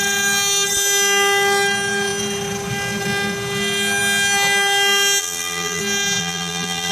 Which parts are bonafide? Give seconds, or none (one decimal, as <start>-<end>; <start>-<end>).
0.0-5.2; 5.8-6.2